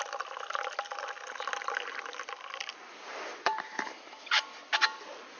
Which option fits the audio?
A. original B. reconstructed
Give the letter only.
A